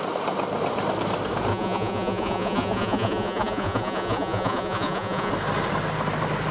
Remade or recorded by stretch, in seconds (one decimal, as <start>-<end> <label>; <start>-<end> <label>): 0.0-1.5 recorded; 1.5-5.3 remade; 5.3-6.5 recorded